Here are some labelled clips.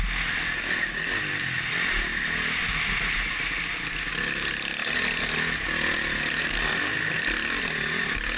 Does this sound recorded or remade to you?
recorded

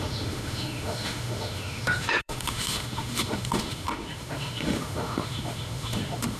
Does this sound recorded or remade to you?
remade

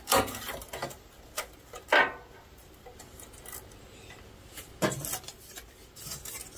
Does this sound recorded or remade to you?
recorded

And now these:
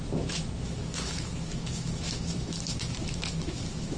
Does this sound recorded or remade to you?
remade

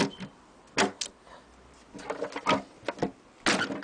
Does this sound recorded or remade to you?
recorded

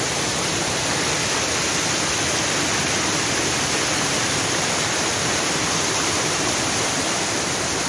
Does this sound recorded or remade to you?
recorded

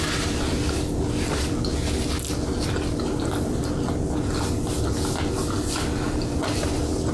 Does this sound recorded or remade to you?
recorded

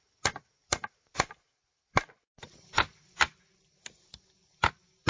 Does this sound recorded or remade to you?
recorded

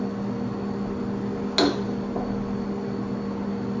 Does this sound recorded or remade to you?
recorded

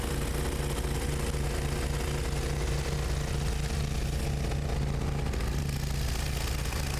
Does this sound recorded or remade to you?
recorded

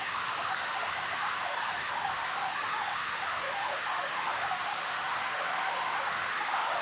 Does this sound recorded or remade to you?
remade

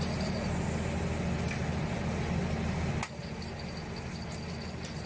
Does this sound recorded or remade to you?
recorded